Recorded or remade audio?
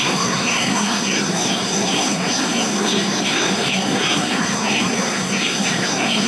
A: remade